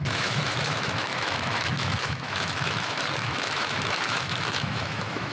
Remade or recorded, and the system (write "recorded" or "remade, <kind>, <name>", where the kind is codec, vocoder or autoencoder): remade, autoencoder, DAC-VAE